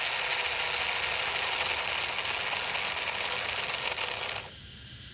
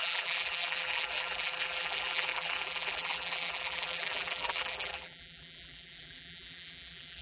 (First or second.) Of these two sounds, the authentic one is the first